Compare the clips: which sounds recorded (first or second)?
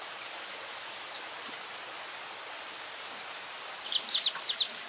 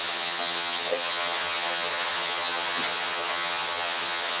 first